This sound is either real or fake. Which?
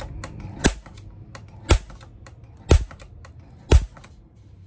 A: real